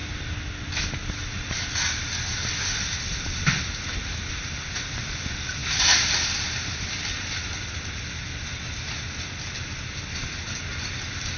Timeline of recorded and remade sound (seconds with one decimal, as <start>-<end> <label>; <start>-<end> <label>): 0.0-11.4 recorded